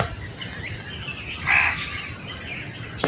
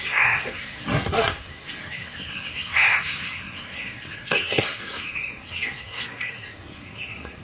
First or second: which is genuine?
first